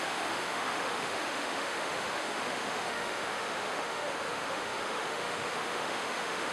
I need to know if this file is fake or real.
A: fake